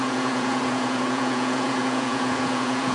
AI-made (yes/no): yes